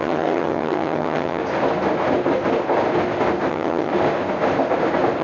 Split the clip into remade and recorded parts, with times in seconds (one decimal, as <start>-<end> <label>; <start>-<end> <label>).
0.0-1.4 remade; 1.4-3.5 recorded; 3.5-3.9 remade; 3.9-5.2 recorded